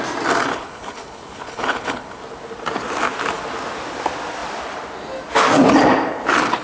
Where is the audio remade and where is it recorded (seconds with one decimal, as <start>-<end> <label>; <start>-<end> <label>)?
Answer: 0.0-0.5 recorded; 0.5-2.2 remade; 2.2-6.6 recorded